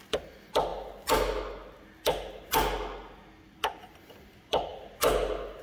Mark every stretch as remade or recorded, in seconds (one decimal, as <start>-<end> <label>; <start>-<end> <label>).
0.0-5.6 recorded